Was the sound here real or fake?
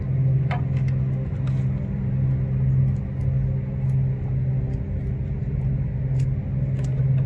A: real